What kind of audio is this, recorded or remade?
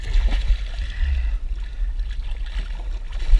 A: recorded